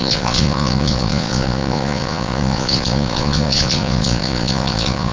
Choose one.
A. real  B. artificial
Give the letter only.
B